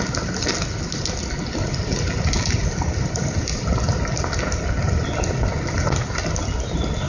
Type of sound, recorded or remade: recorded